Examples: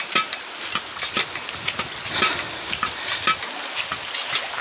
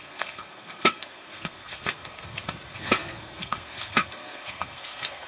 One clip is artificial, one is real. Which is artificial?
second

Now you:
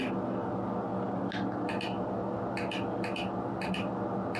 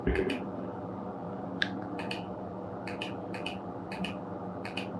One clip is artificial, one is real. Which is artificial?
second